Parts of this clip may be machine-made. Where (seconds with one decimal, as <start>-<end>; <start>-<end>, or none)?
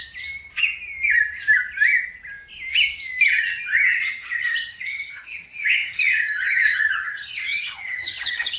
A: 3.3-8.6